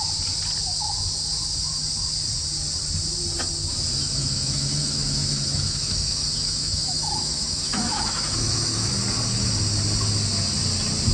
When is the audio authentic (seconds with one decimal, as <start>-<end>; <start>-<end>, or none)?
0.0-4.0; 8.9-11.1